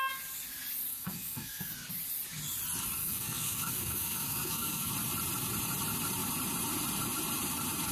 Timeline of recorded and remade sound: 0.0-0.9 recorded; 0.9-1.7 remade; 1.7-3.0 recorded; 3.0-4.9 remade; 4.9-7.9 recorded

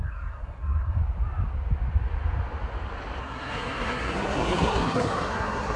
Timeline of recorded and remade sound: 0.0-1.0 remade; 1.0-3.2 recorded; 3.2-5.8 remade

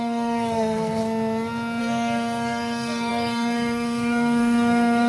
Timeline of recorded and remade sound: 0.0-1.0 remade; 1.0-1.8 recorded; 1.8-5.1 remade

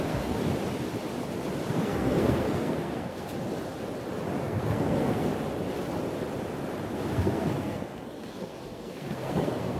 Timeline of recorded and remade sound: 0.0-0.4 remade; 0.4-1.7 recorded; 1.7-3.3 remade; 3.3-4.4 recorded; 4.4-5.3 remade; 5.3-6.9 recorded; 6.9-9.8 remade

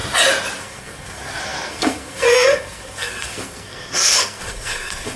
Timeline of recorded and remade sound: 0.0-0.6 recorded; 0.6-5.2 remade

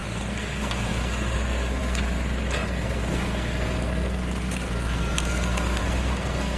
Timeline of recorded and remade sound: 0.0-6.6 remade

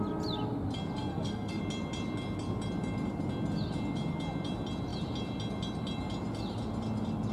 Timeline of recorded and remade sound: 0.0-1.1 recorded; 1.1-1.6 remade; 1.6-7.3 recorded

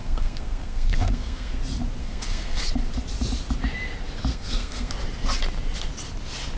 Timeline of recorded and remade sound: 0.0-1.6 remade; 1.6-2.0 recorded; 2.0-2.6 remade; 2.6-4.3 recorded; 4.3-4.9 remade; 4.9-6.6 recorded